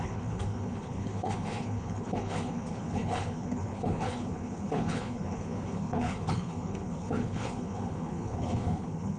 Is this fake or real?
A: fake